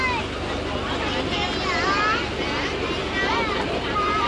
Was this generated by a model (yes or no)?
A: no